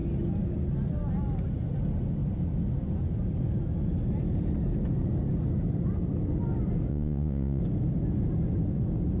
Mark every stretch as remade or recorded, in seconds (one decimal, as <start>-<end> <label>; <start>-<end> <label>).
0.0-6.9 recorded; 6.9-7.6 remade; 7.6-9.2 recorded